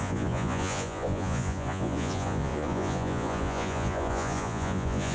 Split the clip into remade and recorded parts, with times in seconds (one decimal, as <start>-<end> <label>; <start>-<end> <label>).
0.0-5.1 remade